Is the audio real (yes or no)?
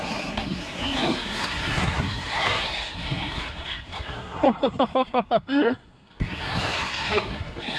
no